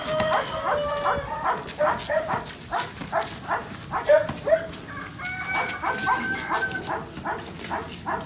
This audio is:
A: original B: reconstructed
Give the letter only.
A